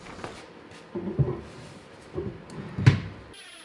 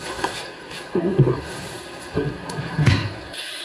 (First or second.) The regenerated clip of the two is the second